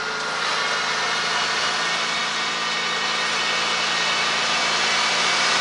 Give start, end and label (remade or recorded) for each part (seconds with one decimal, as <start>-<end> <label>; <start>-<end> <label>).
0.0-5.6 recorded